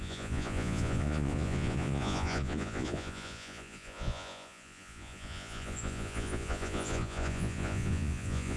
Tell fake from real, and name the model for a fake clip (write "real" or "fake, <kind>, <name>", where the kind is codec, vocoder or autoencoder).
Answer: fake, vocoder, Vocos